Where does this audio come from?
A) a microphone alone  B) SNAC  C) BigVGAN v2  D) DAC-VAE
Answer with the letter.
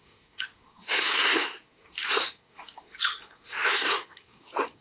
B